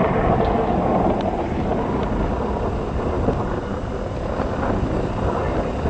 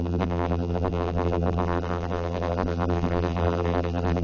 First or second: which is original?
first